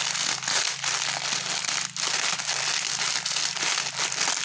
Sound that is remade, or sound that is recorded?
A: recorded